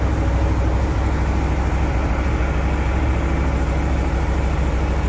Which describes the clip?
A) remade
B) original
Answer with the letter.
B